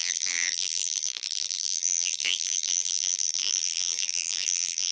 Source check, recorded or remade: remade